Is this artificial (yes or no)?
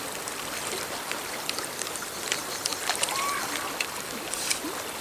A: yes